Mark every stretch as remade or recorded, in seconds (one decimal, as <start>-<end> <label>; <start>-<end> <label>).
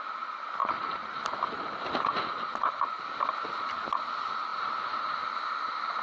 0.0-6.0 recorded